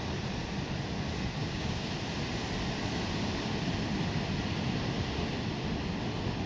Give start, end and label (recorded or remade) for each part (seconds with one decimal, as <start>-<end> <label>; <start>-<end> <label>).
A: 0.0-1.4 recorded; 1.4-1.9 remade; 1.9-6.5 recorded